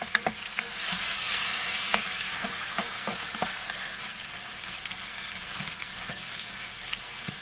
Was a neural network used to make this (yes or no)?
yes